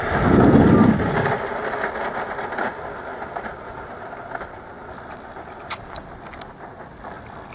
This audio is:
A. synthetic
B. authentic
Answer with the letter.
B